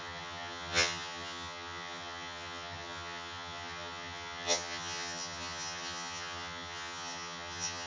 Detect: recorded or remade remade